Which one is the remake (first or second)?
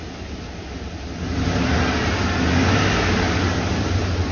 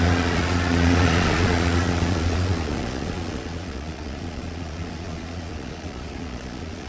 second